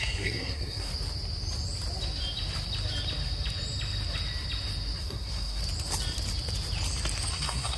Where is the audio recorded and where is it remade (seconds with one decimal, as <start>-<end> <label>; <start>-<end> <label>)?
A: 0.0-0.9 remade; 0.9-5.0 recorded; 5.0-5.6 remade; 5.6-7.3 recorded; 7.3-7.8 remade